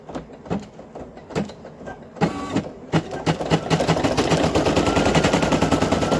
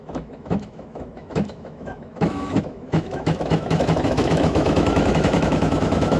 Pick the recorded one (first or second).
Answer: first